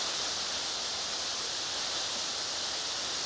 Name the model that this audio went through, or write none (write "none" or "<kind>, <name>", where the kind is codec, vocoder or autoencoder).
none